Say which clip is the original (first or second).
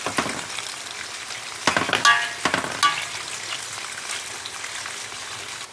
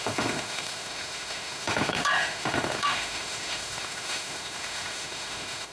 first